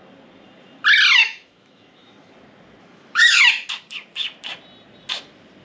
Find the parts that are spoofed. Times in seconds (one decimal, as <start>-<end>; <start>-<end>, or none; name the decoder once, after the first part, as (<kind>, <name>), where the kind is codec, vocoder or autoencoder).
1.2-2.3 (autoencoder, DAC-VAE); 2.8-3.4